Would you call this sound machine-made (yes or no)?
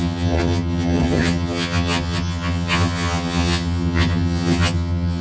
yes